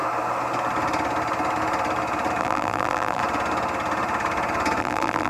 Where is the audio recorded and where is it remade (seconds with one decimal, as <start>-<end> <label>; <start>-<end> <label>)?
0.0-2.4 recorded; 2.4-3.2 remade; 3.2-4.8 recorded; 4.8-5.3 remade